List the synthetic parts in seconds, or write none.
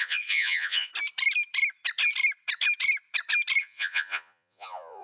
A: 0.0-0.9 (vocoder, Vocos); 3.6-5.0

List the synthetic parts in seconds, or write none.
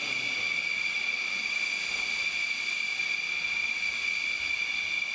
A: none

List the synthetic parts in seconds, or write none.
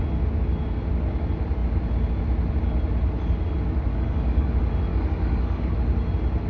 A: 3.9-4.5 (codec, DAC); 4.9-5.7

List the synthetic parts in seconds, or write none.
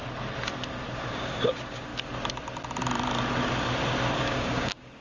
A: 1.1-1.9 (codec, DAC); 4.2-5.0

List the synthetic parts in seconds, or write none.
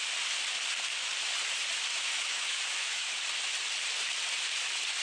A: 1.9-3.1 (autoencoder, DAC-VAE)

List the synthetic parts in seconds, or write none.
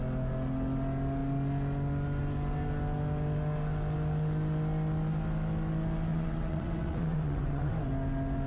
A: 6.1-7.7 (vocoder, WaveNeXt)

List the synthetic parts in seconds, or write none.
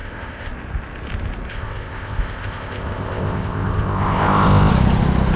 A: 0.0-0.5 (codec, ZipCodec); 1.5-4.7